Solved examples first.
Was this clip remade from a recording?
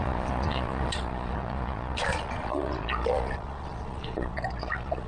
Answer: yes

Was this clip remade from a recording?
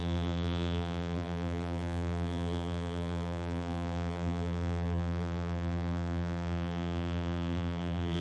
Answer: yes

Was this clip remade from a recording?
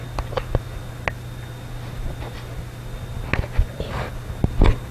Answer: no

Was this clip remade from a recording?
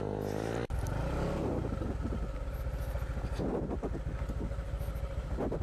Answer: no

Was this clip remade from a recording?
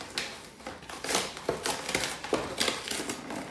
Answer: no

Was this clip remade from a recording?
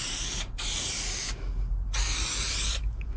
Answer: no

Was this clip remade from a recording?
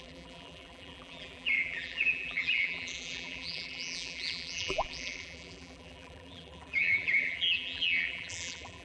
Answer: yes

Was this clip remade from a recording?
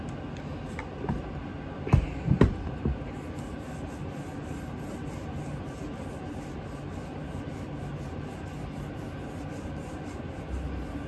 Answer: no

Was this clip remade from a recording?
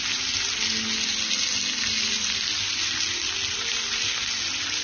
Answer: no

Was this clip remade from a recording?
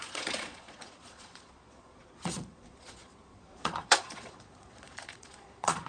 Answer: yes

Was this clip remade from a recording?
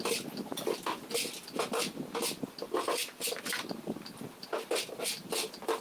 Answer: no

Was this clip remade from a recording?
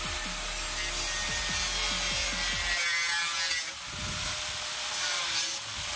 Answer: no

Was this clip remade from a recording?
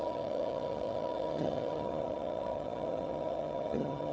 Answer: yes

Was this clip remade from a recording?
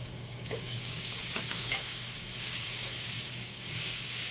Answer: yes